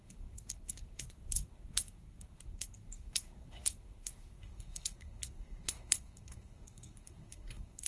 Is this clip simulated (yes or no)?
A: yes